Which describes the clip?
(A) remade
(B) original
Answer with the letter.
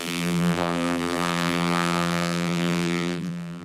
A